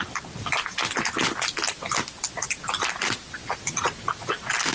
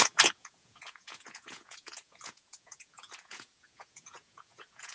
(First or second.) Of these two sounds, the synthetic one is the second